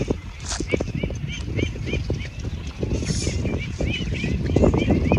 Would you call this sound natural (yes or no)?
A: yes